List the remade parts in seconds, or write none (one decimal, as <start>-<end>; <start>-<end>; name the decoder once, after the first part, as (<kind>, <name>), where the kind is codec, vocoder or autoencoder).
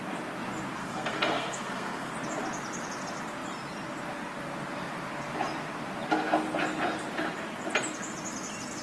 0.8-2.1 (codec, SNAC)